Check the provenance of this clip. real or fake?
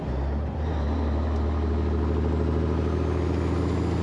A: real